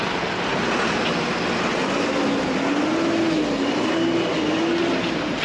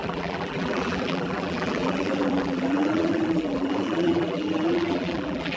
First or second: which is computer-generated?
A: second